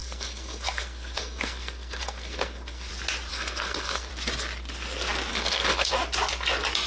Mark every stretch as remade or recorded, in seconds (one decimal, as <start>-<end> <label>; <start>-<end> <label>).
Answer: 0.0-2.9 remade; 2.9-3.3 recorded; 3.3-4.1 remade; 4.1-5.3 recorded; 5.3-5.9 remade; 5.9-6.9 recorded